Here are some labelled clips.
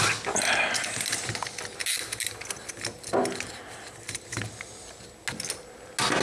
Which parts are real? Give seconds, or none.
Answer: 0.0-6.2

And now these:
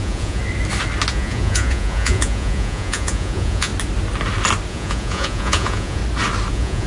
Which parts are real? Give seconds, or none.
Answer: 0.4-1.1; 3.7-4.7; 6.0-6.5

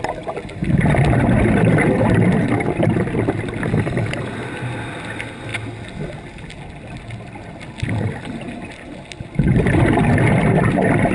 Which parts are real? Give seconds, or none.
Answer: 0.0-11.1

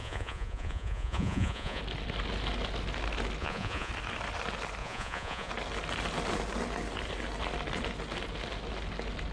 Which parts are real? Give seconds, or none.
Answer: 1.8-3.4; 3.9-4.8; 5.5-9.3

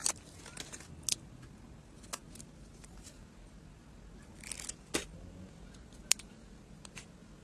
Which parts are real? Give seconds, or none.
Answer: 0.0-7.4

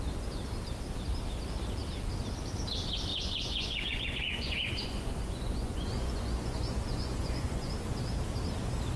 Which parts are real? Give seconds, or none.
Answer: 0.0-3.1; 7.7-9.0

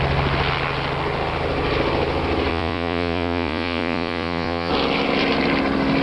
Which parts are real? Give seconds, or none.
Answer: 0.0-2.5; 4.7-6.0